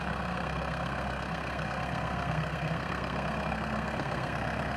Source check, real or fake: fake